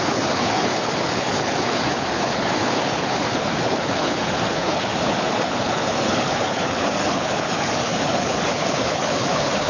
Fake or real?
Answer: fake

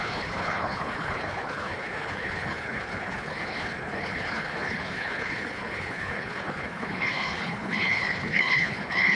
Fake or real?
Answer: fake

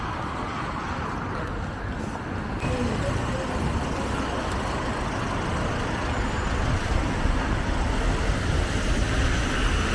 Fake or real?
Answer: real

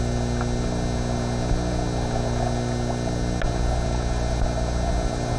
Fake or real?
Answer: real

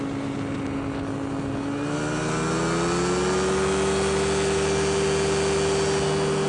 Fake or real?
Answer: real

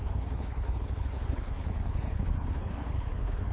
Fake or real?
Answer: fake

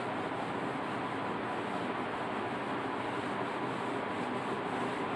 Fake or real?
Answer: real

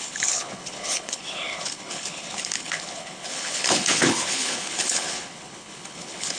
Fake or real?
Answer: fake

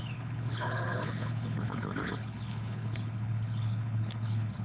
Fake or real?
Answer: fake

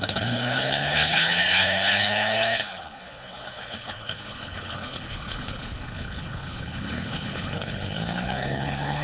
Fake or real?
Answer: fake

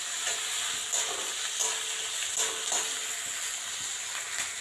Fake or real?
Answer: real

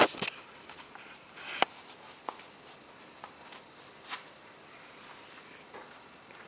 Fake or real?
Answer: real